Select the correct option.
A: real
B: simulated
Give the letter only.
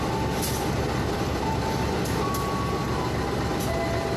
A